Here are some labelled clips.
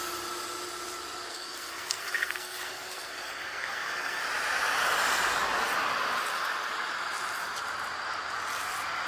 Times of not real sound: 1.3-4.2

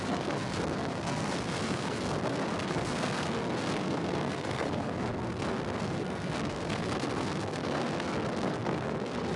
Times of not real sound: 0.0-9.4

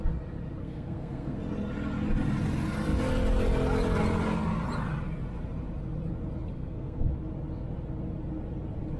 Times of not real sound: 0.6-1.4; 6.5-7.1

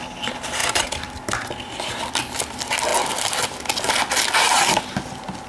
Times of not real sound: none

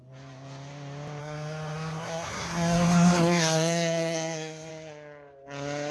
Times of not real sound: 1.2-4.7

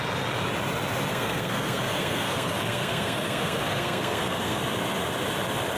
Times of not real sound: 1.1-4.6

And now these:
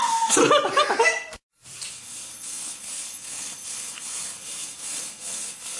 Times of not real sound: 0.0-0.4; 1.9-5.8

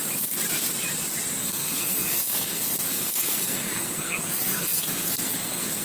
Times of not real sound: 1.4-5.8